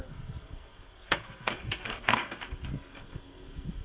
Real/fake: fake